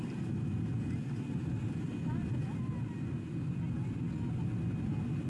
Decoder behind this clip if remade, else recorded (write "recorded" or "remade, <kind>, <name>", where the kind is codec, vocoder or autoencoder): recorded